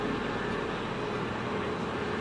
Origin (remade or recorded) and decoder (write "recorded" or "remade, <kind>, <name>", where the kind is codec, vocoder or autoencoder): recorded